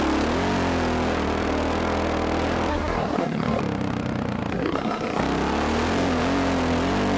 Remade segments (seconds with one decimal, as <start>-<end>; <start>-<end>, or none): 2.7-3.6; 4.5-5.2

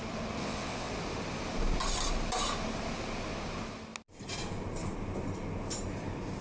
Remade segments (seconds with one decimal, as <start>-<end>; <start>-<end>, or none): 0.4-0.9

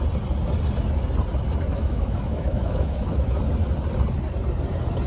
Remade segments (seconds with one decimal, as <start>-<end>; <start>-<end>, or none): 1.7-3.4

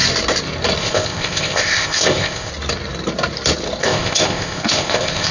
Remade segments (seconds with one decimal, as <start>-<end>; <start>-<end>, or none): 0.8-2.5; 3.8-5.3

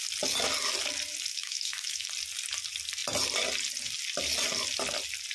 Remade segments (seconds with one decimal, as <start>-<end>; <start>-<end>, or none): 1.3-2.1